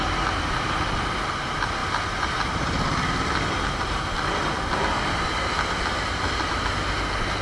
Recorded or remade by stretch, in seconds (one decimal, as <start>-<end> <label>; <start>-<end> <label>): 0.0-7.4 recorded